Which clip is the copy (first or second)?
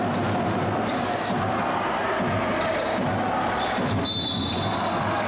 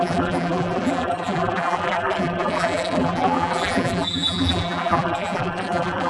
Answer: second